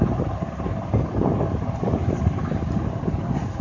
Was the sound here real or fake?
real